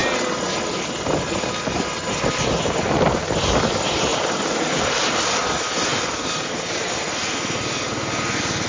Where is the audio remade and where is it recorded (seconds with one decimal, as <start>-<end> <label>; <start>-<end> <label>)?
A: 0.0-8.7 recorded